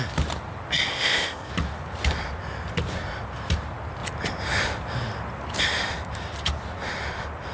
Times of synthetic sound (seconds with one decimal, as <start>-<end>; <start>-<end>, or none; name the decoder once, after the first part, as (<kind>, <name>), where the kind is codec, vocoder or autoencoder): 0.9-1.5 (codec, ZipCodec)